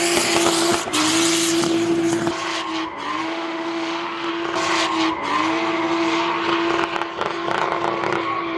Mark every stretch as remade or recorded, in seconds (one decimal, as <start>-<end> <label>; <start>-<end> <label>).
0.0-3.2 recorded; 3.2-4.3 remade; 4.3-8.6 recorded